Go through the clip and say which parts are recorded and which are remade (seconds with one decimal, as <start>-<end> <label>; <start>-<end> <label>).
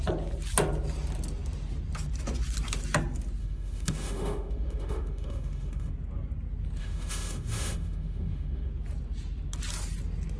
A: 0.0-3.4 recorded; 3.4-5.9 remade; 5.9-6.8 recorded; 6.8-8.7 remade; 8.7-10.4 recorded